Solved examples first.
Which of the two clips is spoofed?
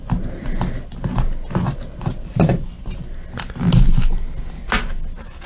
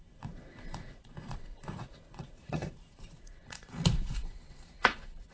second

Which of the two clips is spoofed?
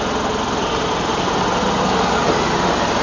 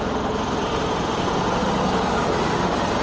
second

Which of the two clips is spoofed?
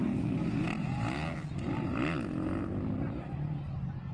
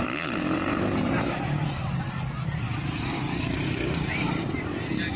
second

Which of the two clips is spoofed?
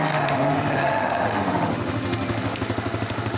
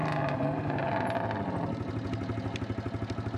first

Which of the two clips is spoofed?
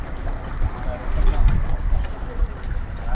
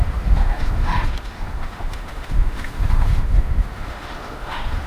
second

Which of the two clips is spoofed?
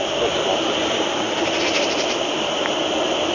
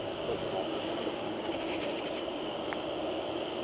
second